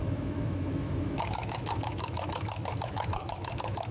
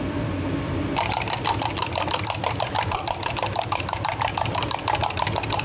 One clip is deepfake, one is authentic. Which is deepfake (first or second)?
first